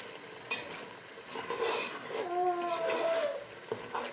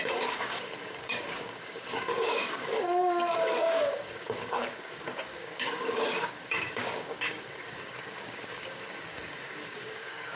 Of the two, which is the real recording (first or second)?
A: first